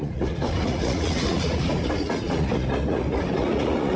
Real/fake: fake